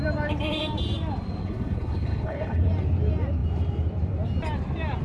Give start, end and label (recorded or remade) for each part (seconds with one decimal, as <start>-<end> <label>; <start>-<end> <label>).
0.0-1.4 recorded; 1.4-2.7 remade; 2.7-5.0 recorded